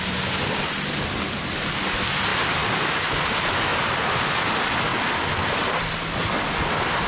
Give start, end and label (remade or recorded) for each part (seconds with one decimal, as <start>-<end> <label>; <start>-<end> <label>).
0.0-2.3 recorded; 2.3-3.0 remade; 3.0-7.1 recorded